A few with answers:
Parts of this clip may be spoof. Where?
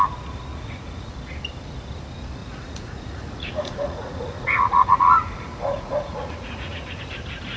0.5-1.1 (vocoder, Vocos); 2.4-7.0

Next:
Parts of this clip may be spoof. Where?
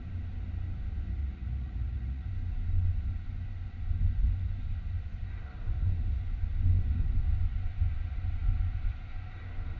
1.2-2.3 (vocoder, Vocos)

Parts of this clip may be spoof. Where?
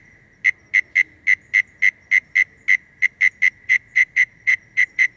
0.0-0.4 (vocoder, Vocos); 3.5-5.2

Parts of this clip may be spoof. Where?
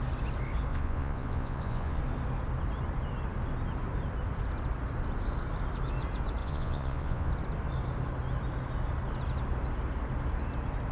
0.7-2.0 (vocoder, Vocos); 6.4-7.3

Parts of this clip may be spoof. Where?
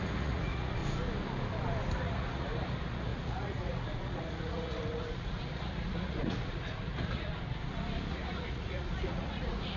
0.0-0.8 (vocoder, Vocos); 2.0-7.3; 8.1-9.8